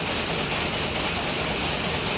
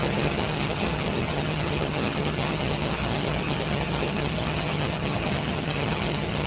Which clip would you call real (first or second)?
first